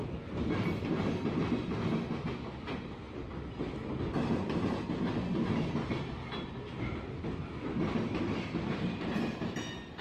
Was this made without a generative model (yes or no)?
yes